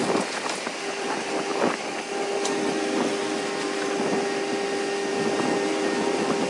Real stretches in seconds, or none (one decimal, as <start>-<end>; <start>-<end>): 0.0-6.5